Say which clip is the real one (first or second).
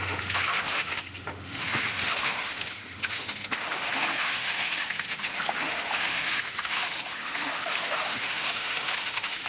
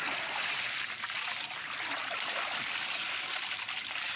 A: second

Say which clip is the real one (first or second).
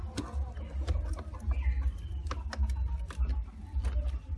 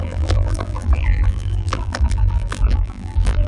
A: first